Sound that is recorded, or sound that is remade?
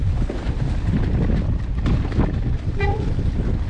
recorded